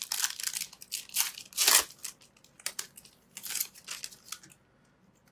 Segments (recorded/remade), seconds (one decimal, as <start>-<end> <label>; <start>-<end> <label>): 0.0-5.3 recorded